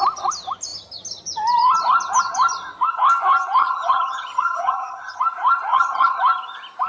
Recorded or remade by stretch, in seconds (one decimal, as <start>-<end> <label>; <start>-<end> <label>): 0.0-3.6 recorded; 3.6-5.2 remade; 5.2-5.7 recorded; 5.7-6.2 remade; 6.2-6.9 recorded